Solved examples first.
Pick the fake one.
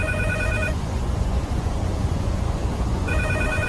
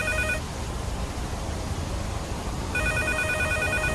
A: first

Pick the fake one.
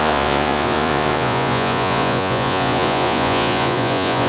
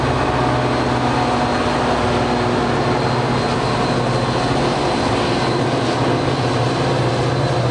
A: first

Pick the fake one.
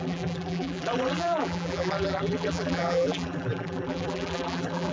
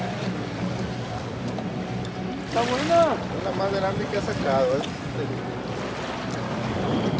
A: first